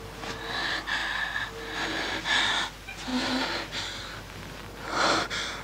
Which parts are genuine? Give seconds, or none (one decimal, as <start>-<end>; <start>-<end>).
0.0-5.6